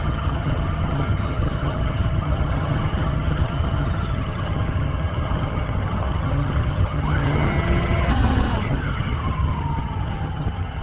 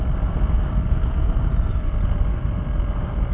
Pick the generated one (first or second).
first